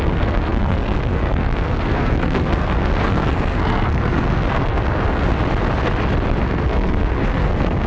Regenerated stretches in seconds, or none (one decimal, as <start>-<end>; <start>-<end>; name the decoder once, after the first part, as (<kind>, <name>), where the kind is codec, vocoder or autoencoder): 0.0-5.3 (codec, SNAC); 6.4-7.9